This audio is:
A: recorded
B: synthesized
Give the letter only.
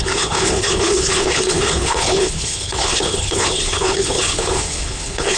B